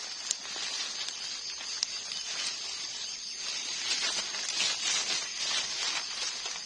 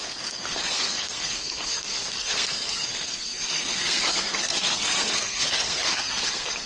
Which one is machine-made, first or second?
second